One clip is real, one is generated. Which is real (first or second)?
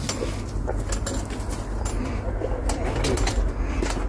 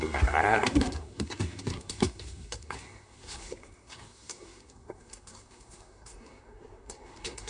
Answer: first